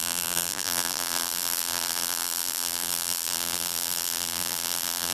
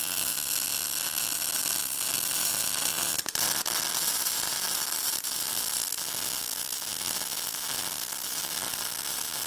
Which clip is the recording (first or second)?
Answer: second